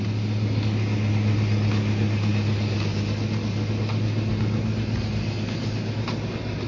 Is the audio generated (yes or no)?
no